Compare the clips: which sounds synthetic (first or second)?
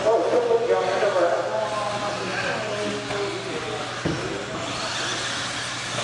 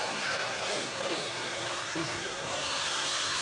second